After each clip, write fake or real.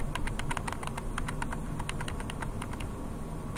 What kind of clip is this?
real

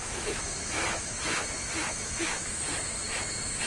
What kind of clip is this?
fake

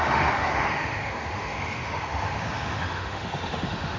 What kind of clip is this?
fake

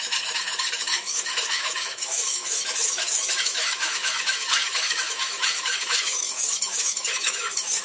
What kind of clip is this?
fake